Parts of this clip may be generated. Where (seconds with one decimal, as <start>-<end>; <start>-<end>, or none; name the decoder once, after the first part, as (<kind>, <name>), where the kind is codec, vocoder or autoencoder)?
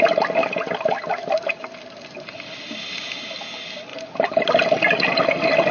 none